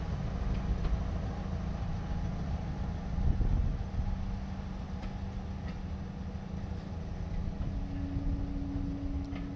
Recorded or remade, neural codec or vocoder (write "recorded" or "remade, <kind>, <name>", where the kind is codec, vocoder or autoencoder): recorded